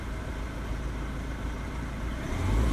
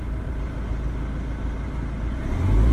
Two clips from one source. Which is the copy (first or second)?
first